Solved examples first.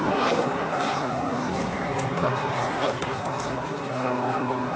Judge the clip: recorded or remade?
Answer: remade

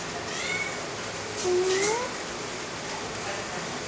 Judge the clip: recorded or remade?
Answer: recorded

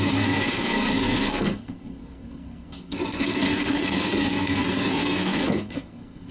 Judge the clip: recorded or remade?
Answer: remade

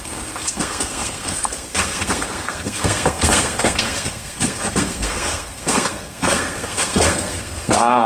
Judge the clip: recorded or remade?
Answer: remade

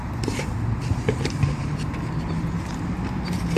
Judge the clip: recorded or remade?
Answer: recorded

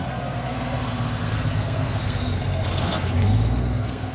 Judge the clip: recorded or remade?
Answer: remade